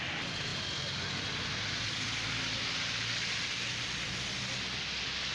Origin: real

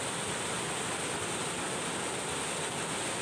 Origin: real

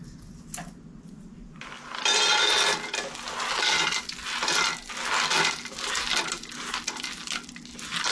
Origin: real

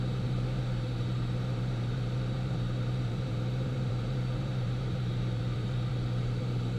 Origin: fake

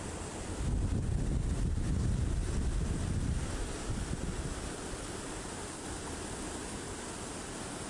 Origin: real